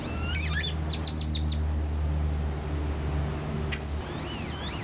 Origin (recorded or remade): recorded